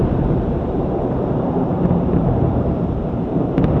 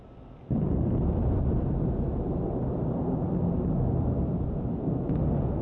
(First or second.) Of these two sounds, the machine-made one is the first